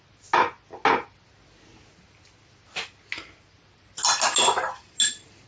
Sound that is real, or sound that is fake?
real